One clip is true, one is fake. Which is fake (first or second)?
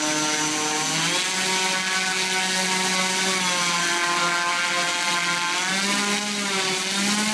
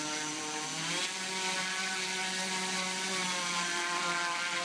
second